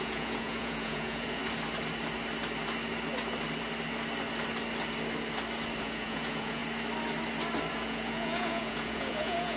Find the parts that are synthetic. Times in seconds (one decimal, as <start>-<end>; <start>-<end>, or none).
0.0-1.4; 5.8-6.6; 7.7-9.6